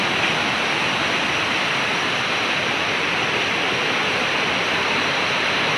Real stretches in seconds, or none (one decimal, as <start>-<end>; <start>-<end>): 1.9-2.6